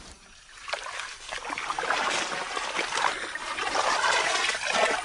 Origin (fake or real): real